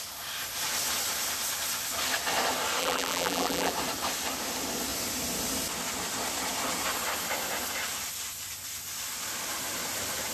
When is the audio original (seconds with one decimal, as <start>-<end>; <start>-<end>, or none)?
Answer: 0.0-2.8; 3.7-10.3